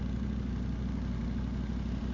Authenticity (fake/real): real